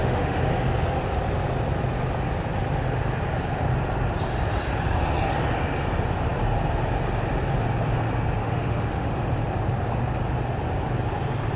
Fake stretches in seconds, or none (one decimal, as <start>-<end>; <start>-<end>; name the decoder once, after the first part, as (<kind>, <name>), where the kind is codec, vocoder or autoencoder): 0.0-0.5 (autoencoder, DAC-VAE); 8.4-9.3